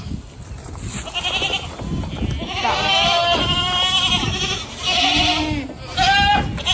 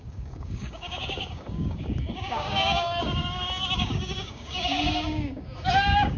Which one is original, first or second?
first